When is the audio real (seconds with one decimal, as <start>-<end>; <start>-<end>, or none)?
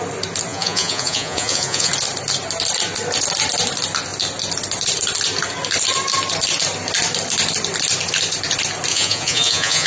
0.0-0.5; 1.9-8.9